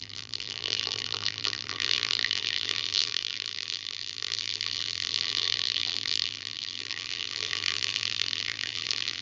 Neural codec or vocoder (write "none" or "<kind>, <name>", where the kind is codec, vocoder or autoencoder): vocoder, BigVGAN v2